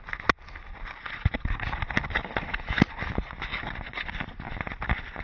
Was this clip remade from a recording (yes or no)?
no